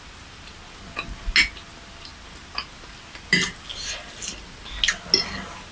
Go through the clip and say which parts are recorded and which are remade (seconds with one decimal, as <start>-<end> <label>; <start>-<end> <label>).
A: 0.0-5.7 recorded

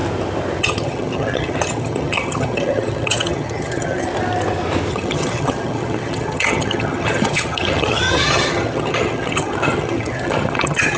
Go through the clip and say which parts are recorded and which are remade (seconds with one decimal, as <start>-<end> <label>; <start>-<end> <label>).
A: 0.0-0.6 recorded; 0.6-4.1 remade; 4.1-4.9 recorded; 4.9-11.0 remade

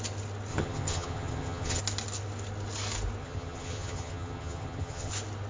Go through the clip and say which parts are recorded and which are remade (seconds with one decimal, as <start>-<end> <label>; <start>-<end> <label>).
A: 0.0-0.5 recorded; 0.5-1.8 remade; 1.8-3.2 recorded; 3.2-5.1 remade; 5.1-5.5 recorded